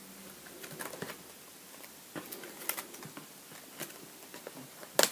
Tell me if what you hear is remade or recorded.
recorded